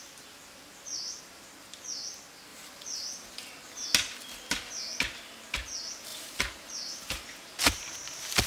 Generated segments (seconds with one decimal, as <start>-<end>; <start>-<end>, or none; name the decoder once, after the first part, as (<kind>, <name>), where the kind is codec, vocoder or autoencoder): 6.1-7.6 (vocoder, BigVGAN v2)